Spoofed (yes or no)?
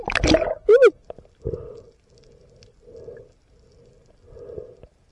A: no